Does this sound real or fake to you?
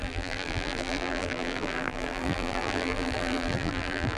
fake